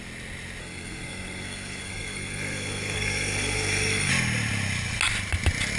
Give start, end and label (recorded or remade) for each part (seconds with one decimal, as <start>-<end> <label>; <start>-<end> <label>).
0.0-0.6 recorded; 0.6-4.1 remade; 4.1-5.8 recorded